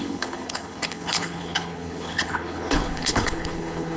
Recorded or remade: remade